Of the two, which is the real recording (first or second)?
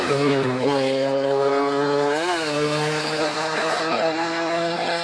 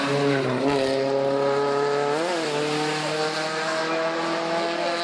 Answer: second